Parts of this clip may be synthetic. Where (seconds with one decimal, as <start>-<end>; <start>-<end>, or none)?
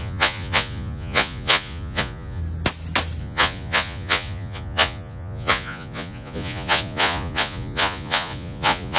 0.0-2.4; 3.2-9.0